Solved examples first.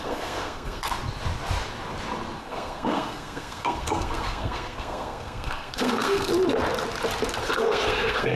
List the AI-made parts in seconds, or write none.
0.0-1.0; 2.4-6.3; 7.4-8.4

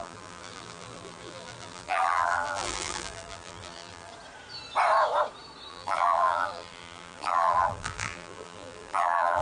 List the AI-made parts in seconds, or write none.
0.0-4.1; 5.7-9.4

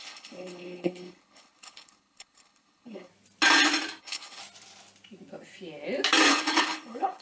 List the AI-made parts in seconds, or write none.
0.0-3.1; 4.0-4.4; 6.3-7.2